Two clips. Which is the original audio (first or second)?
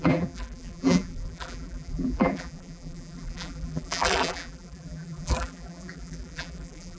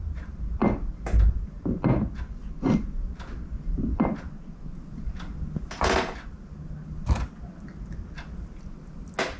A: second